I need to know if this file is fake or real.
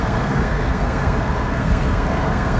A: fake